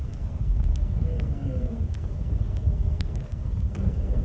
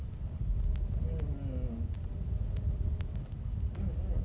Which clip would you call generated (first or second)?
first